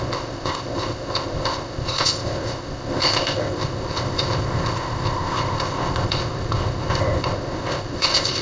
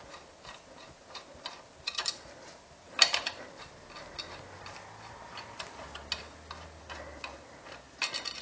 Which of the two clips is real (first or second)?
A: second